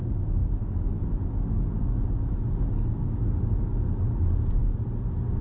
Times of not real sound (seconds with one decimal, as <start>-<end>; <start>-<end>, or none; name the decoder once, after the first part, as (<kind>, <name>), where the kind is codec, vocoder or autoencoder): none